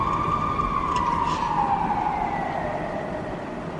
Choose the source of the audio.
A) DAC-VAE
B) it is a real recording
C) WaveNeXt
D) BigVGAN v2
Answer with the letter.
B